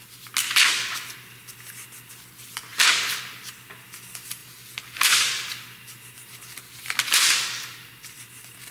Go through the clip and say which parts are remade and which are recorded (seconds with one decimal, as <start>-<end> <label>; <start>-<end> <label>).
0.0-8.7 recorded